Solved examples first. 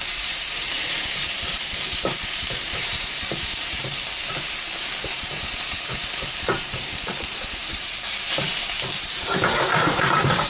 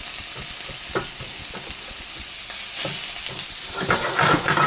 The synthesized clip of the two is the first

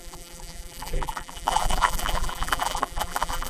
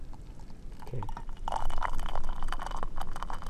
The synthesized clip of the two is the first